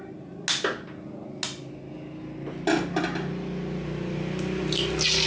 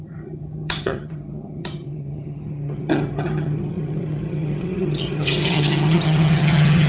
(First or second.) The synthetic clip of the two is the second